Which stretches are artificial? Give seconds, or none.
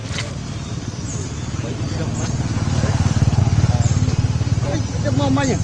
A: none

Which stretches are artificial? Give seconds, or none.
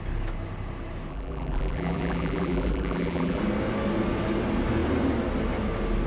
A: 1.1-3.4 (vocoder, BigVGAN v2)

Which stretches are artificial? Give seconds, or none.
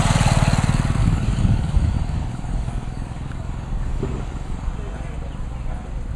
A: 1.0-4.7 (codec, DAC)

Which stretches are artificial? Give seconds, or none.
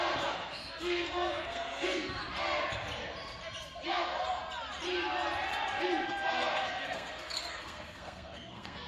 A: 0.0-2.2 (codec, SNAC); 3.9-4.4; 5.8-8.9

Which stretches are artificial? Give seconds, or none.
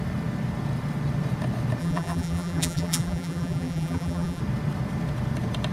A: 1.8-4.4 (vocoder, BigVGAN v2)